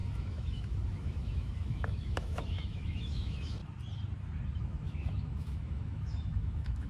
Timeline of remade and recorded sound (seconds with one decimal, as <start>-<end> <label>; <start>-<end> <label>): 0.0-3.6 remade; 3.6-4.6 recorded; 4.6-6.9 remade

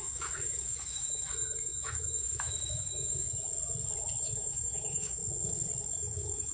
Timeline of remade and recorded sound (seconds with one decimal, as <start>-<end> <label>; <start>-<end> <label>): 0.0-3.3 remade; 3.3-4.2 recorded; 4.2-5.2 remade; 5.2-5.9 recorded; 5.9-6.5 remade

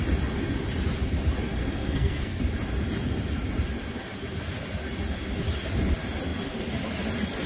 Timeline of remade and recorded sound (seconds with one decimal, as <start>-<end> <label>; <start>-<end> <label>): 0.0-1.6 recorded; 1.6-2.4 remade; 2.4-7.5 recorded